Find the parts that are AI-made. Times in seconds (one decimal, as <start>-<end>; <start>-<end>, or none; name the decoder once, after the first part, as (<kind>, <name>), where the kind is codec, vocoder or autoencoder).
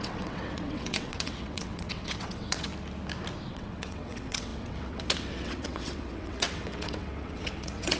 0.0-2.7 (vocoder, WaveNeXt); 3.5-8.0